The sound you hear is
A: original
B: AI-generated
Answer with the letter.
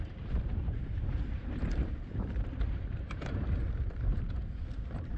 B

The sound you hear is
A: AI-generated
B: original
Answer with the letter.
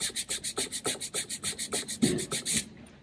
A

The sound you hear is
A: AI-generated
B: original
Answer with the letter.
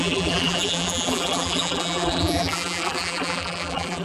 A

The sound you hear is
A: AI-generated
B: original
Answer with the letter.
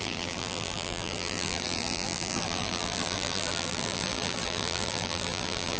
A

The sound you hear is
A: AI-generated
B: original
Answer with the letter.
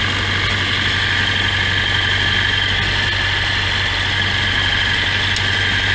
B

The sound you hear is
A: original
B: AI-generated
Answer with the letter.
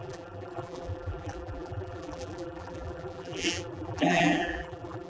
B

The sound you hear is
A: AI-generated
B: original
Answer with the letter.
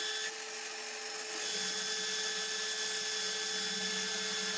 B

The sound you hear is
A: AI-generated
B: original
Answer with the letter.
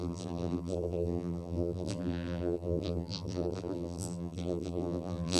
A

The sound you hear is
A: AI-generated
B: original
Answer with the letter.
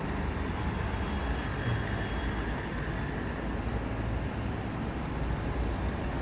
B